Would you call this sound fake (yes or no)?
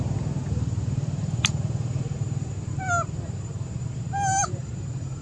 yes